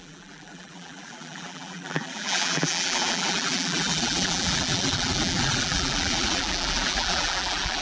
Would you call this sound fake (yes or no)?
yes